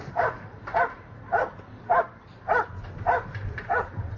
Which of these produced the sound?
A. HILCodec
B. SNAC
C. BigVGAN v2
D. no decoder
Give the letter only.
C